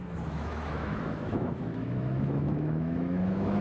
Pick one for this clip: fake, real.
fake